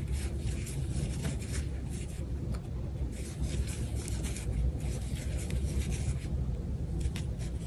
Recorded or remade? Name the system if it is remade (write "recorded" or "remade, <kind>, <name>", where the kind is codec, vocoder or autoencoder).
recorded